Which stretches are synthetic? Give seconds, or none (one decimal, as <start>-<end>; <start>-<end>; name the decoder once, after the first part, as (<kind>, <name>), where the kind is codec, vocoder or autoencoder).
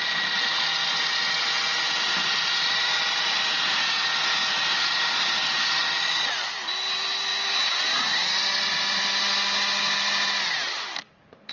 none